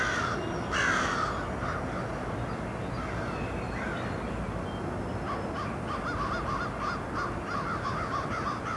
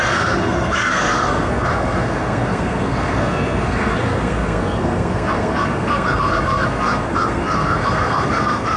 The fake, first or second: second